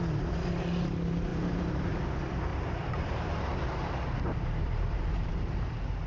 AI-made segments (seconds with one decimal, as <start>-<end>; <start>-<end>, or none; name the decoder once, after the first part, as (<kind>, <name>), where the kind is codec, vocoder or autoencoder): 1.3-2.0 (vocoder, BigVGAN v2); 2.5-5.6